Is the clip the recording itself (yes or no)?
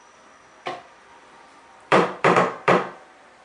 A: no